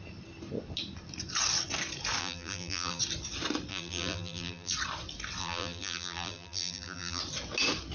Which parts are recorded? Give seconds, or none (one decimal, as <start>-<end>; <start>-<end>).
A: 0.0-2.2; 3.0-3.7; 4.7-5.4; 7.2-7.9